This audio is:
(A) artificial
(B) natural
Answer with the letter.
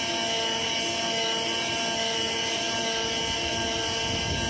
B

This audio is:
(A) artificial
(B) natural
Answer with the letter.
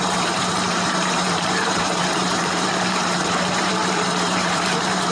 A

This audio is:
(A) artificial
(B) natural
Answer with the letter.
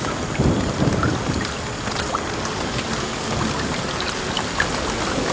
B